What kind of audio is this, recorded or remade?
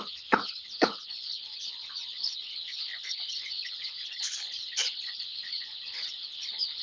remade